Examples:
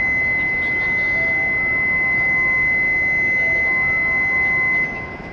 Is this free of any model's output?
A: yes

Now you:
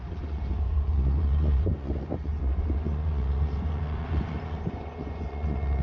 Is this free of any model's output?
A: no